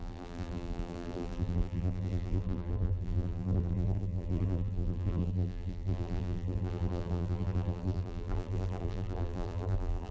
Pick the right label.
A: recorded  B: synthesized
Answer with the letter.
B